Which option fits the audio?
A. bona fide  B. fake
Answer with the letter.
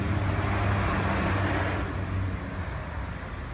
A